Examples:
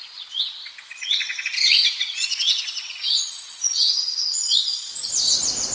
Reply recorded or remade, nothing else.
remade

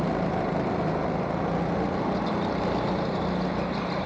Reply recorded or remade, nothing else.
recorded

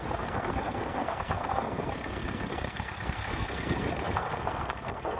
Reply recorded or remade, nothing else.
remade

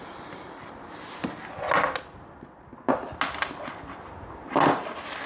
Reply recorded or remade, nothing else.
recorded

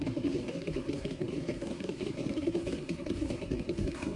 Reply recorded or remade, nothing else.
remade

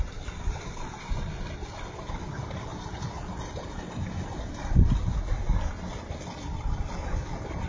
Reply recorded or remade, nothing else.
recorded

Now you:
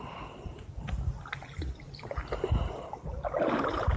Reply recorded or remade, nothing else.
recorded